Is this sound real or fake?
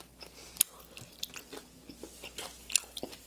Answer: real